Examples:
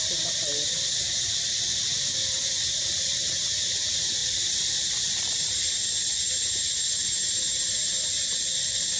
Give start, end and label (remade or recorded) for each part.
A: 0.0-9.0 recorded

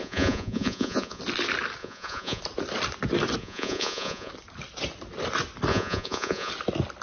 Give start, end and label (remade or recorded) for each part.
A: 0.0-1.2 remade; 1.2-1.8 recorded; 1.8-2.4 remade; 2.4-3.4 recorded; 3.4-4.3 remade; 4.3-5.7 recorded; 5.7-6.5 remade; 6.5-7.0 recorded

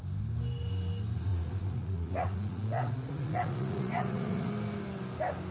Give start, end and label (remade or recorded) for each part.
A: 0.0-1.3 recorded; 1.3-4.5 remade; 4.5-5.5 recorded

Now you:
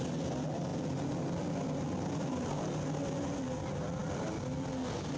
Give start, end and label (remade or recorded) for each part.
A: 0.0-5.2 recorded